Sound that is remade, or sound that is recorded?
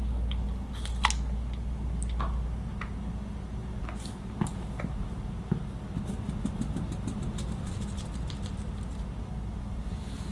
recorded